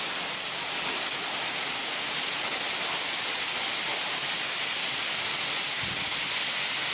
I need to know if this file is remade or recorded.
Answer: recorded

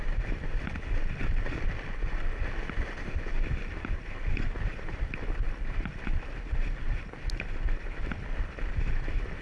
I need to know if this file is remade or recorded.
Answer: recorded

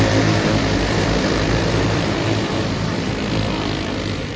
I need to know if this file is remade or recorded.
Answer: remade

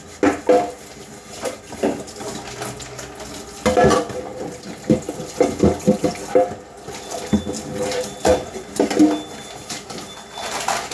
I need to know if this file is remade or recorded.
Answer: recorded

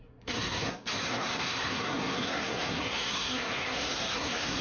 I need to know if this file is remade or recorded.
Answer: remade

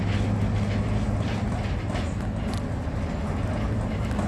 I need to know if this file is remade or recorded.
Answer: recorded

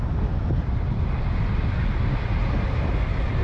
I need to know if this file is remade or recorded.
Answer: recorded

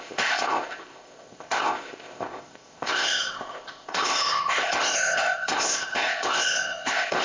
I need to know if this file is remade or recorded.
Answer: remade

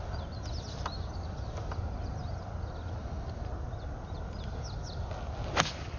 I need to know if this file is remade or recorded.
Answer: recorded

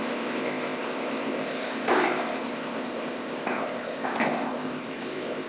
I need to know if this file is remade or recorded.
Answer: remade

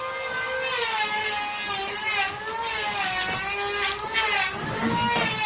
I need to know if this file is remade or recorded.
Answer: recorded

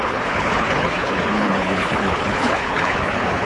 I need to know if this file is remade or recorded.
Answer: remade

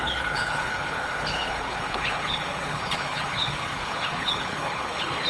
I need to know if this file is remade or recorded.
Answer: remade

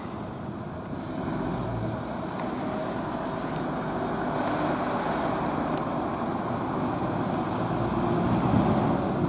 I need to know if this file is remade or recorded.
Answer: recorded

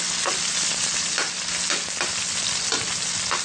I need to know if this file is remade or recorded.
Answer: recorded